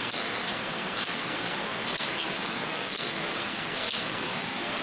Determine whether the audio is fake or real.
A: fake